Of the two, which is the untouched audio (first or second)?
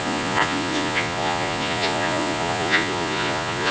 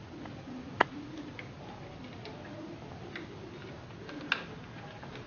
second